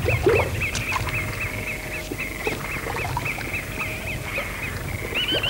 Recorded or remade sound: recorded